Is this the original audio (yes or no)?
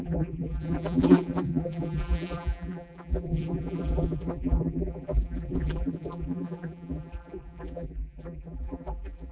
no